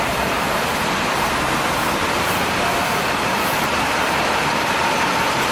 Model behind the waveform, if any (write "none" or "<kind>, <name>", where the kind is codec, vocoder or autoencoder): vocoder, BigVGAN v2